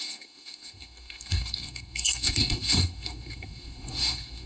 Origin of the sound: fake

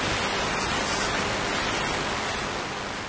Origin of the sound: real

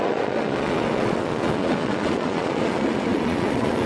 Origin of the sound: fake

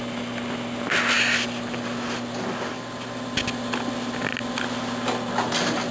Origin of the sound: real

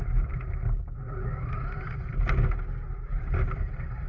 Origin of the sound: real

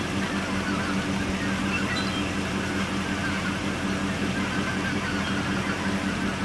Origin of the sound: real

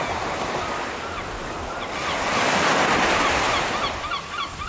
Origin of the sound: real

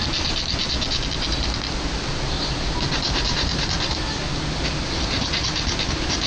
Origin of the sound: real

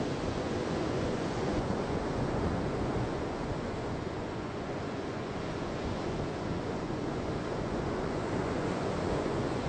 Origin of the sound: fake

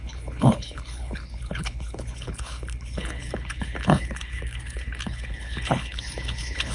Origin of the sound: fake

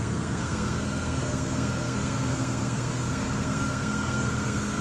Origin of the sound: fake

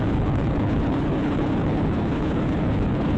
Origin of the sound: fake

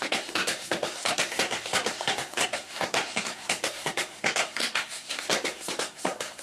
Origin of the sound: fake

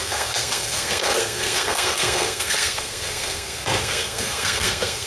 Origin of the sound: fake